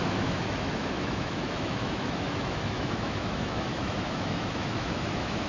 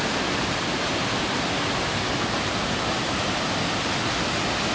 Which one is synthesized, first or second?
first